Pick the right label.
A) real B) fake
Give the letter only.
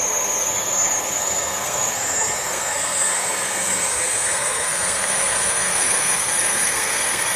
B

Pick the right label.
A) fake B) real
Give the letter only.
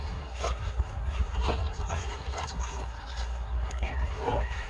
A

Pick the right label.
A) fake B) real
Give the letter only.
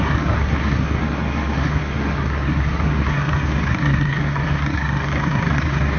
A